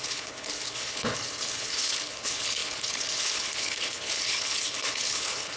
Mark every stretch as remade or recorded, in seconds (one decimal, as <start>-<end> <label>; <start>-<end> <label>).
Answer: 0.0-5.6 remade